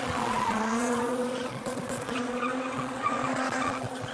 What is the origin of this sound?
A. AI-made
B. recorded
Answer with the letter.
A